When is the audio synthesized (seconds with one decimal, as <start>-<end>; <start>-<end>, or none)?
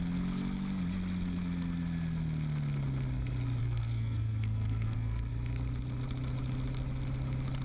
3.6-5.3